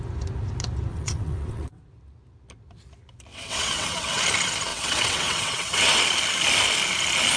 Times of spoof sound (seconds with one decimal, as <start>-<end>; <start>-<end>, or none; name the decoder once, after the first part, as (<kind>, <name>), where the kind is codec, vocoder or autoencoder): 0.9-1.8 (vocoder, WaveNeXt); 3.3-4.2; 4.7-6.0